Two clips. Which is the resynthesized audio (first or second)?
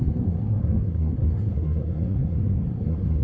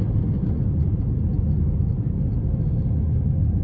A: first